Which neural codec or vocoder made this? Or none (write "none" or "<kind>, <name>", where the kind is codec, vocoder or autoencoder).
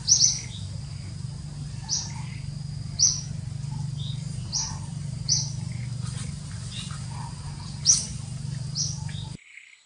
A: none